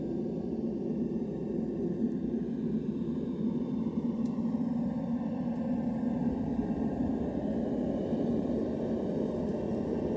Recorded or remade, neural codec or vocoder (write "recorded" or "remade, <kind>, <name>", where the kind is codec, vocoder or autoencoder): recorded